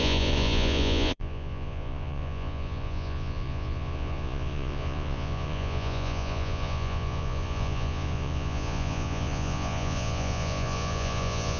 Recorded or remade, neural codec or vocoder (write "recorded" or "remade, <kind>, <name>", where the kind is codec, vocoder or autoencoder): remade, vocoder, Vocos